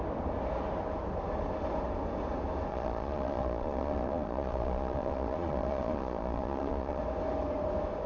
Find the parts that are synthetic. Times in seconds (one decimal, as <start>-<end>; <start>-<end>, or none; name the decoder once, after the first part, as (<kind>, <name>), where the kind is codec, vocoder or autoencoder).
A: 2.7-7.0 (vocoder, Vocos)